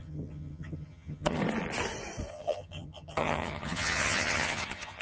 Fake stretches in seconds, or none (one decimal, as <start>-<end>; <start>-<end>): 0.0-1.4; 2.3-5.0

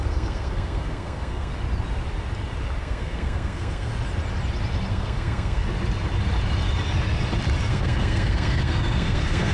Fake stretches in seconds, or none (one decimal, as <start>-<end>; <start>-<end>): 0.0-1.5; 2.8-3.9; 4.9-5.6; 7.7-9.5

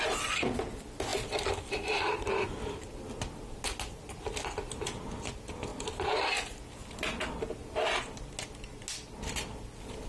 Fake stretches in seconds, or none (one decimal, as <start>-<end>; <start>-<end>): none

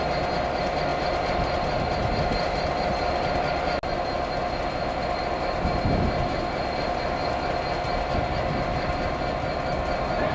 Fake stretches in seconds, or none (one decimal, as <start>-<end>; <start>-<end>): none

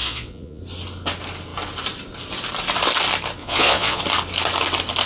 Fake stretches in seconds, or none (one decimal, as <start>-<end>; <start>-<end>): 0.0-0.6; 3.4-4.0

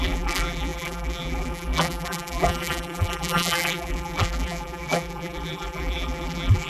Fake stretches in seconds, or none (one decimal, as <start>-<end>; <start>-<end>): 0.0-6.7